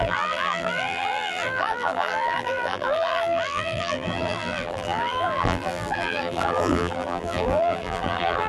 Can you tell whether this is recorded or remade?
remade